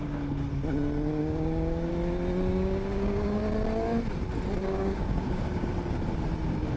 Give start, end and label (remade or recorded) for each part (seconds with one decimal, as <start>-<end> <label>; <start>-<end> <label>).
0.0-1.2 recorded; 1.2-1.9 remade; 1.9-2.5 recorded; 2.5-3.4 remade; 3.4-4.6 recorded; 4.6-5.7 remade; 5.7-6.8 recorded